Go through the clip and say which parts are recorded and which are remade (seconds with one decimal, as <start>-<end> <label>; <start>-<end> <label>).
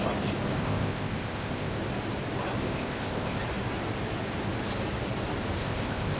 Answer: 0.0-0.6 recorded; 0.6-1.8 remade; 1.8-2.6 recorded; 2.6-3.4 remade; 3.4-5.6 recorded; 5.6-6.2 remade